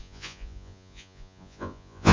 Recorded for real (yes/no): no